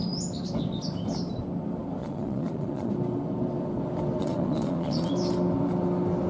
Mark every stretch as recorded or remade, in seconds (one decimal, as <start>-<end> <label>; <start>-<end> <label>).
0.0-2.0 recorded; 2.0-2.9 remade; 2.9-4.2 recorded; 4.2-5.1 remade; 5.1-6.3 recorded